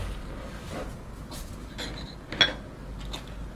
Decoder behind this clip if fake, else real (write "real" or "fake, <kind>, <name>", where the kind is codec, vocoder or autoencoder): real